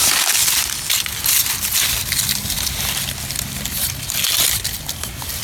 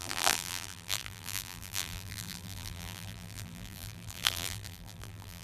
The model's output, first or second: second